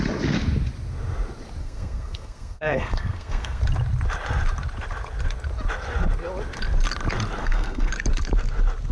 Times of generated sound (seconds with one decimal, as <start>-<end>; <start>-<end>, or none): 1.6-3.6; 7.4-7.9